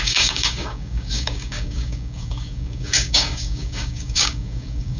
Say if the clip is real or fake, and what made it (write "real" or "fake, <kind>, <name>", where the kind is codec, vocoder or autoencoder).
fake, codec, DAC